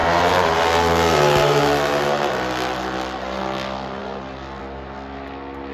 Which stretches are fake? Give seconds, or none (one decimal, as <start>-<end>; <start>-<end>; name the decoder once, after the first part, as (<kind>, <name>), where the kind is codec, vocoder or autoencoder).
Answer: none